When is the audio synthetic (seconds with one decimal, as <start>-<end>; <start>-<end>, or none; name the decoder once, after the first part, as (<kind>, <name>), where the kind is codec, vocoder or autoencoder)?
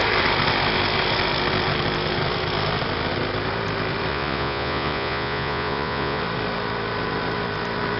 4.1-6.2 (vocoder, Vocos)